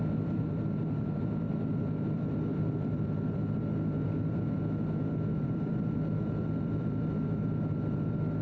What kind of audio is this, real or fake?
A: fake